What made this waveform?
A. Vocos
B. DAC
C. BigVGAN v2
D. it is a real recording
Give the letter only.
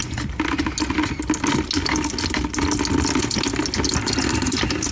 D